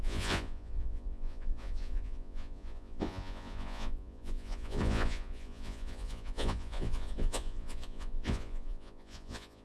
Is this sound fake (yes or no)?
yes